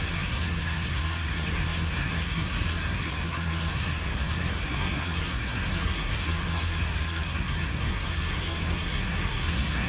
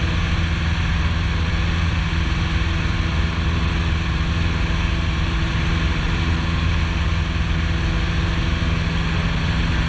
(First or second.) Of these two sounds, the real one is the second